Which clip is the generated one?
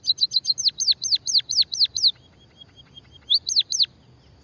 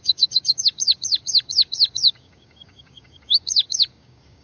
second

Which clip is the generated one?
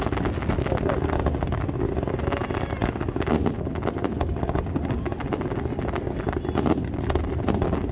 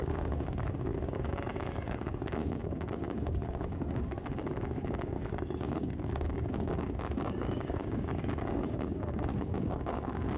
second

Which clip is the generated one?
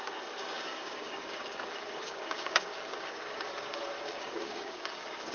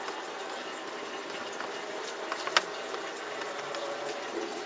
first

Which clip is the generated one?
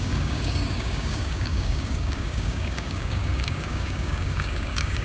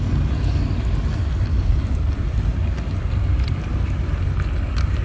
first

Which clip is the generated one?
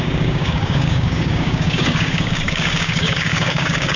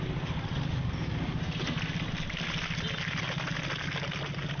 first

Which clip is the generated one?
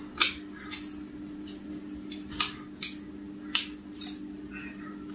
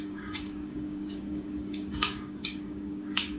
second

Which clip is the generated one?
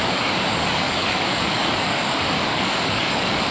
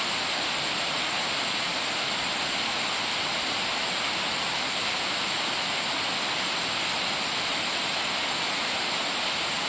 first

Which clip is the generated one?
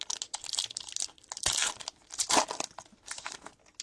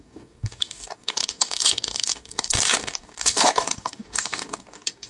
second